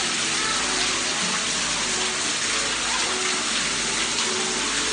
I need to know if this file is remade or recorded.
recorded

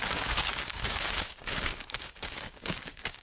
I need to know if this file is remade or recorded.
remade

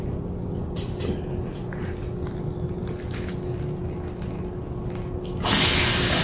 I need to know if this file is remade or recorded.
recorded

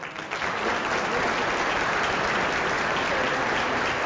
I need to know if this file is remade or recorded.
recorded